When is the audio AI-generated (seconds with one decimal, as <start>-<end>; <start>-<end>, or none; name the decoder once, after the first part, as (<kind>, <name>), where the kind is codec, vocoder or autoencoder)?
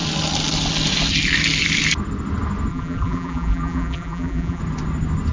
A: 2.7-4.6 (vocoder, BigVGAN v2)